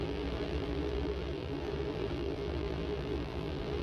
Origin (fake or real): fake